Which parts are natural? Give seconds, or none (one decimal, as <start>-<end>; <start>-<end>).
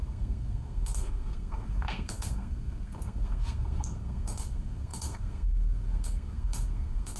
none